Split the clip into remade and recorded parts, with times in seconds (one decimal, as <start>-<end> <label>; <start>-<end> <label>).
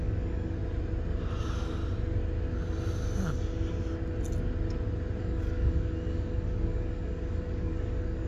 0.0-0.6 remade; 0.6-1.4 recorded; 1.4-1.8 remade; 1.8-5.2 recorded; 5.2-8.3 remade